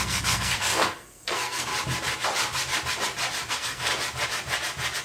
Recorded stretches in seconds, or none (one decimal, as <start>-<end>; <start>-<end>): 1.7-3.5; 3.9-5.0